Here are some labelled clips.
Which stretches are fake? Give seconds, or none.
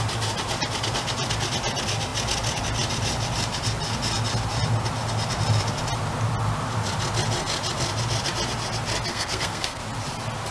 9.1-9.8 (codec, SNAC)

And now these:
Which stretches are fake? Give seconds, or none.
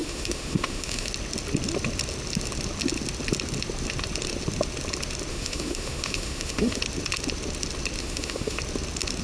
0.0-1.1 (autoencoder, DAC-VAE); 5.3-6.8; 8.0-8.6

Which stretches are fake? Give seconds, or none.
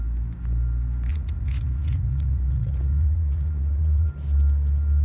1.1-4.1 (vocoder, Vocos)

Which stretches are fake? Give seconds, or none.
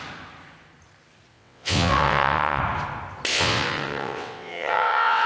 1.3-2.6 (vocoder, WaveNeXt); 3.3-5.3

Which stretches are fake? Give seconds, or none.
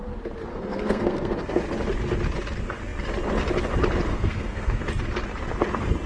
0.5-1.6 (codec, SNAC); 4.1-4.8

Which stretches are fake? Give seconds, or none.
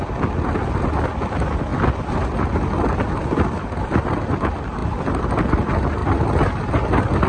4.8-5.3 (vocoder, BigVGAN v2)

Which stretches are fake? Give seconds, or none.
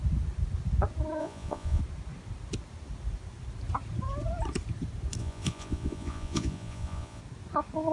1.2-1.8 (vocoder, Vocos); 5.2-7.2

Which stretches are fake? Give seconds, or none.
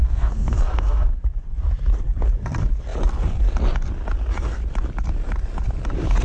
0.0-1.2 (codec, SNAC)